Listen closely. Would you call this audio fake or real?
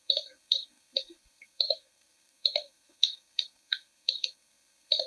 fake